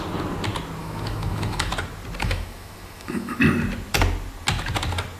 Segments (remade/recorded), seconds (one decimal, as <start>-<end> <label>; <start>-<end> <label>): 0.0-0.8 recorded; 0.8-1.7 remade; 1.7-2.2 recorded; 2.2-3.4 remade; 3.4-5.2 recorded